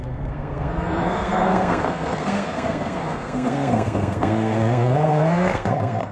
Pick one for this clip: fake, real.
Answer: fake